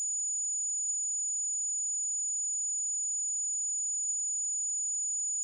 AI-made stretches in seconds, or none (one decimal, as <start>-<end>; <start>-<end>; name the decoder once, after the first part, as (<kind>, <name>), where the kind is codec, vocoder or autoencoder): none